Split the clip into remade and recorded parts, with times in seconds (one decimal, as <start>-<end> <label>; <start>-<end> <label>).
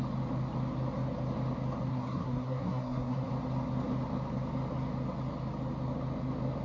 0.0-1.9 recorded; 1.9-3.3 remade; 3.3-6.6 recorded